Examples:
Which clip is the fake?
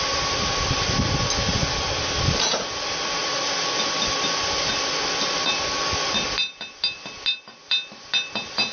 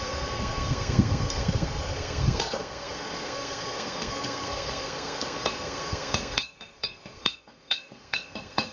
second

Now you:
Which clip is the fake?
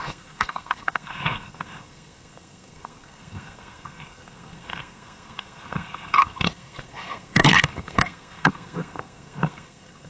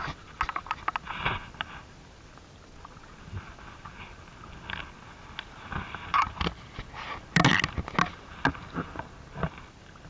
first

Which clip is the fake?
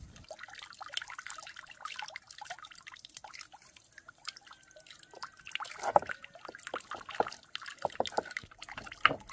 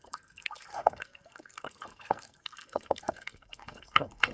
second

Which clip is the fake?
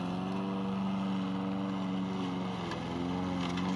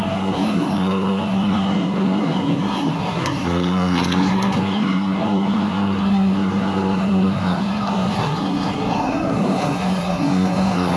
second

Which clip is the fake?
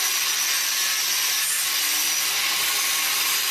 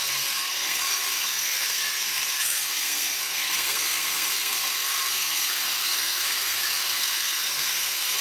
second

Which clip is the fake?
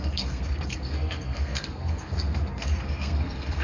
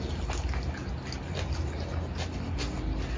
first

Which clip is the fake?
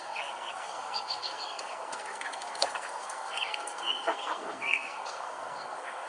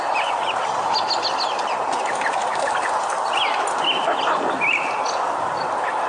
first